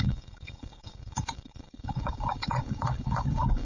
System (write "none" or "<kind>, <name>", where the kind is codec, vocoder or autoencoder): codec, DAC